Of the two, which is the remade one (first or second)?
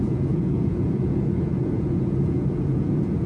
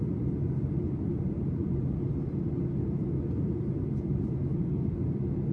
first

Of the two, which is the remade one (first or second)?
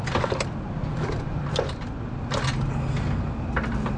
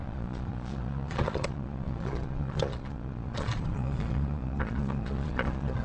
second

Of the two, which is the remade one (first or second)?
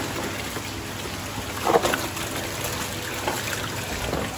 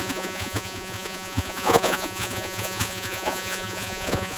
second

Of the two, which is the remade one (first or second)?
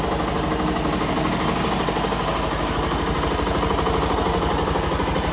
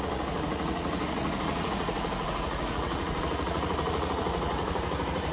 second